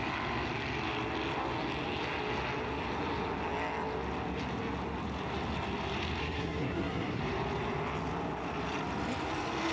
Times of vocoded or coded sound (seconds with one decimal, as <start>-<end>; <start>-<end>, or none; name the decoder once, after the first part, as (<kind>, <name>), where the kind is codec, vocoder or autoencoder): 6.2-7.2 (codec, SNAC)